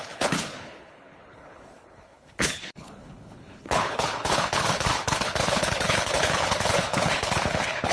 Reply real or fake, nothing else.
fake